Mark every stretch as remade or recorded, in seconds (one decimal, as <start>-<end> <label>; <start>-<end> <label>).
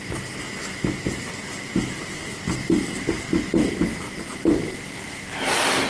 0.0-3.9 recorded; 3.9-4.7 remade; 4.7-5.9 recorded